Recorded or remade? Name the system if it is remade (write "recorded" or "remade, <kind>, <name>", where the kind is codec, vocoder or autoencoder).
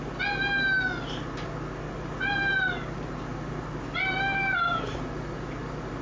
recorded